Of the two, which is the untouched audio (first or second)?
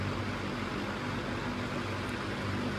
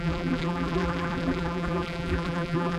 first